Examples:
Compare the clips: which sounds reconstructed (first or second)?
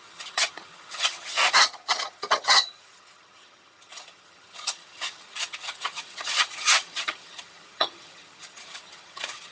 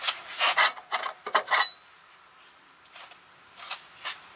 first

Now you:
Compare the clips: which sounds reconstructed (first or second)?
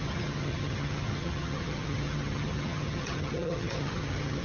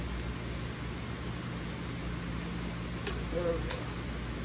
first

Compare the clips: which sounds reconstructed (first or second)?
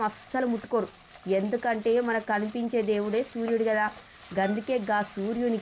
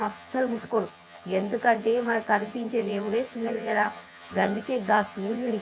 second